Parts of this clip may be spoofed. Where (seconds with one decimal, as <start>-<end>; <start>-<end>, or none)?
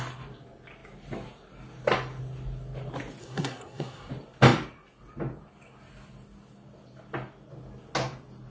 3.2-4.1